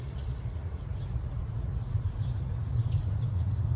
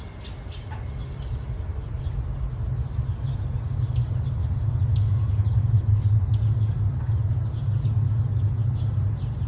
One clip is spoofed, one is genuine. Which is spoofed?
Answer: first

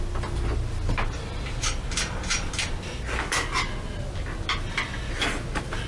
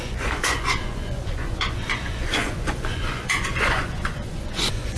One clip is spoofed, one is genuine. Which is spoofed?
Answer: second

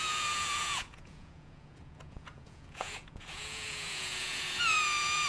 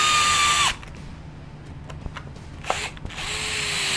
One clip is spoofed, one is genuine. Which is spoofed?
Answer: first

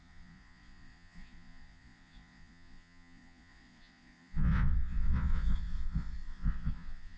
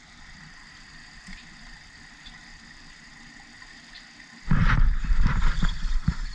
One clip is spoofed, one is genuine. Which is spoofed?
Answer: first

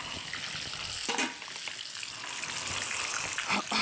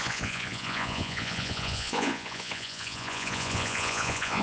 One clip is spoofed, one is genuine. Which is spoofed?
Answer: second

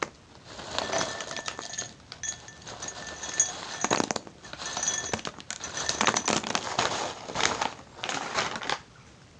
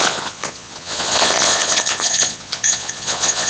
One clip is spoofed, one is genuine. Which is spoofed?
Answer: second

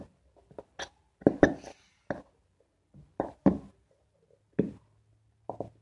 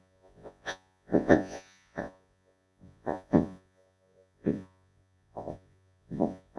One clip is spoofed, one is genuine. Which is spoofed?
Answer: second